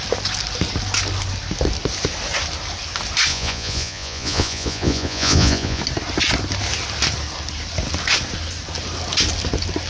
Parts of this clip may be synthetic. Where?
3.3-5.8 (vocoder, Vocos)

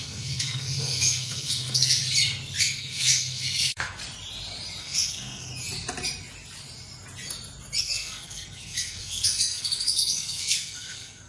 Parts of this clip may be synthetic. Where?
0.0-2.0 (codec, SNAC); 2.6-4.0; 4.8-5.5; 7.8-11.3

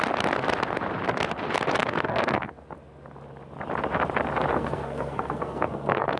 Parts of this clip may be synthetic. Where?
1.8-2.5 (codec, SNAC); 4.5-6.2

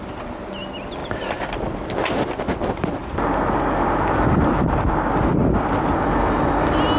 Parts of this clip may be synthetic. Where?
none

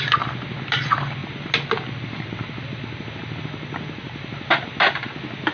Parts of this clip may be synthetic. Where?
none

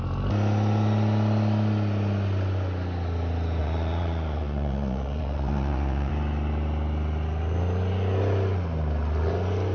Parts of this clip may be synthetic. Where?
3.6-6.1 (vocoder, Vocos)

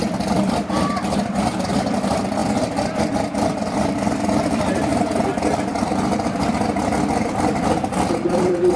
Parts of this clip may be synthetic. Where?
0.0-2.4 (vocoder, BigVGAN v2); 3.0-4.9; 7.9-8.8